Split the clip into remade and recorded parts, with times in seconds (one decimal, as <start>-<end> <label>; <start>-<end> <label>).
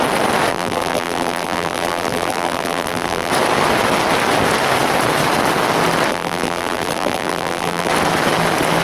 0.0-0.5 recorded; 0.5-3.3 remade; 3.3-6.1 recorded; 6.1-7.9 remade; 7.9-8.8 recorded